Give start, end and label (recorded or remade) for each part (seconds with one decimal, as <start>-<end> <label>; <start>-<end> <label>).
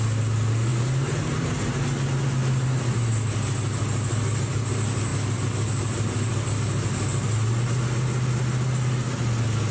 0.0-0.7 recorded; 0.7-1.5 remade; 1.5-9.7 recorded